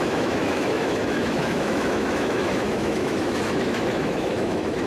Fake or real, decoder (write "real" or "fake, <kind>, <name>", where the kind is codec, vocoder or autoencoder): fake, autoencoder, DAC-VAE